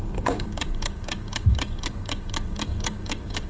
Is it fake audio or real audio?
fake